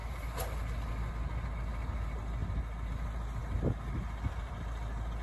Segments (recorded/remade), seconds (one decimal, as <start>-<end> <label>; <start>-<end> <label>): 0.0-5.2 recorded